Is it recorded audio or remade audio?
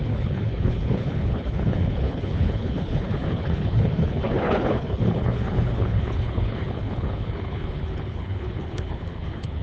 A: remade